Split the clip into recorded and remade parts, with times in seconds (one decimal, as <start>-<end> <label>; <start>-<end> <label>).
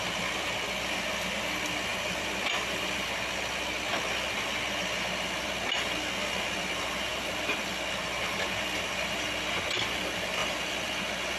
0.0-11.4 recorded